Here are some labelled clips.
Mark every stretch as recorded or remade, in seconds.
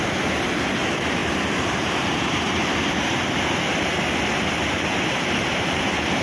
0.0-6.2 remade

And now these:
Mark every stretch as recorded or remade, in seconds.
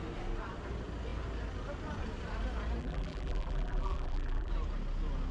0.0-2.8 recorded; 2.8-4.5 remade; 4.5-5.3 recorded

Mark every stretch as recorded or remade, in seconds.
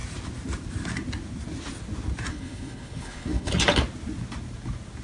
0.0-2.3 recorded; 2.3-3.5 remade; 3.5-5.0 recorded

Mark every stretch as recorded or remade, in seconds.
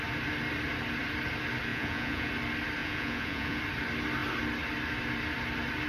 0.0-1.7 recorded; 1.7-2.3 remade; 2.3-2.8 recorded; 2.8-3.6 remade; 3.6-5.9 recorded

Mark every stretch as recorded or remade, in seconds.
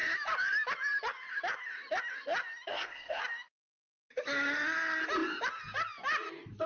0.0-2.7 recorded; 2.7-3.2 remade; 3.2-6.7 recorded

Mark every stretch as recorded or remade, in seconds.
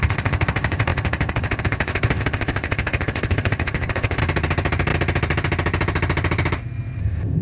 0.0-4.2 remade; 4.2-7.0 recorded; 7.0-7.4 remade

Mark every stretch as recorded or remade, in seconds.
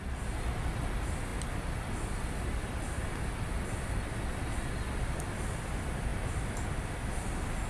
0.0-7.7 recorded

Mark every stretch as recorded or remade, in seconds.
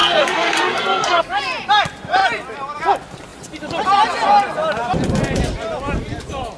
0.0-1.4 remade; 1.4-6.6 recorded